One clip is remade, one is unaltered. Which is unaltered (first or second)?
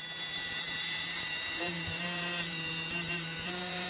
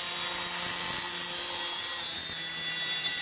second